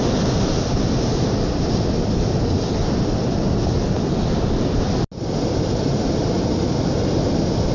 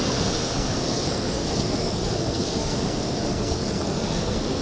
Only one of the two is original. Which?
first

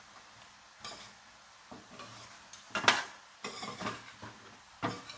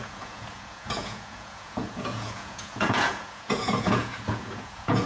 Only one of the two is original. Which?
first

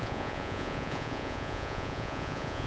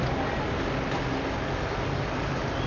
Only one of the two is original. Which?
second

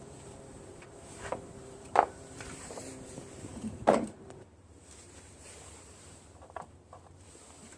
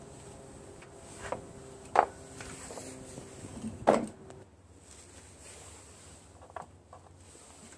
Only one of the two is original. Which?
second